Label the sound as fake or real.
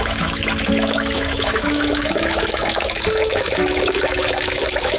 fake